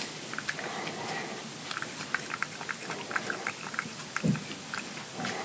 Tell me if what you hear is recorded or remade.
recorded